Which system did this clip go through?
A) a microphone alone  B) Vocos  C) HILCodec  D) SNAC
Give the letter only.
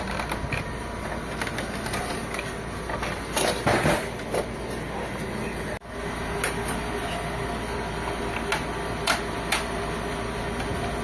A